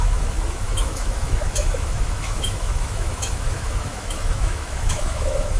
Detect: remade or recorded remade